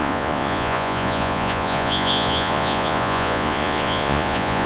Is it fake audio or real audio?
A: fake